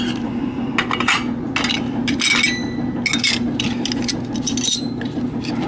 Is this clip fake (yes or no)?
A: no